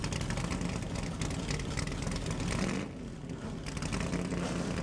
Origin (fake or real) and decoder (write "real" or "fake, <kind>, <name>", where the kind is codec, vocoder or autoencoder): real